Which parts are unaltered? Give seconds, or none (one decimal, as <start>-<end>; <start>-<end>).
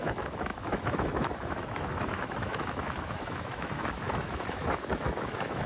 none